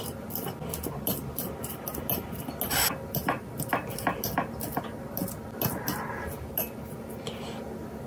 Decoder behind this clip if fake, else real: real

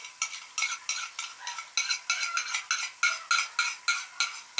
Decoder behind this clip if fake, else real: real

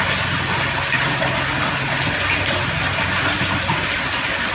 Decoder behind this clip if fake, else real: real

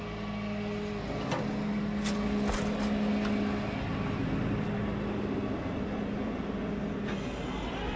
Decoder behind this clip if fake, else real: real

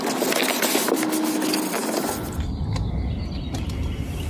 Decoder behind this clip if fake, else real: real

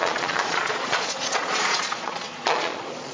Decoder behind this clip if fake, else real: fake, vocoder, Vocos